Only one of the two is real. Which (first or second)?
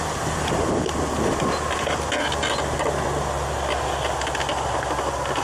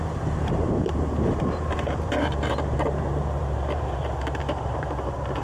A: first